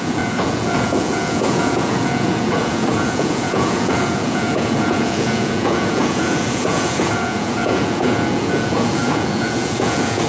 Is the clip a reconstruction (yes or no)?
yes